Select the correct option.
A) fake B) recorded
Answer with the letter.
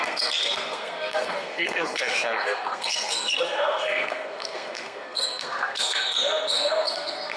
A